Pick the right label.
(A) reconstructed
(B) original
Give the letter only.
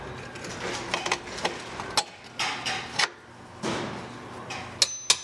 B